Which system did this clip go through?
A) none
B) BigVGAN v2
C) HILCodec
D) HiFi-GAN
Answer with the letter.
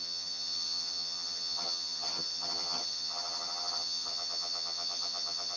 D